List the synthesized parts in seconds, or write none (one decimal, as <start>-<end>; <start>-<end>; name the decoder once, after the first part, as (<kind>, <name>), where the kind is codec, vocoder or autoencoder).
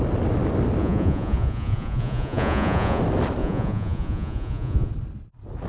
0.8-3.0 (vocoder, Vocos); 3.4-4.9